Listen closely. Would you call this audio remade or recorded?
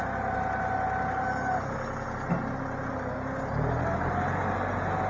recorded